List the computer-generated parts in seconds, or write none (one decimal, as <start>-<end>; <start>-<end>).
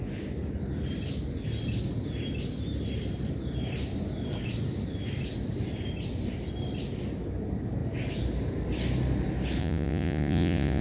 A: 9.6-10.8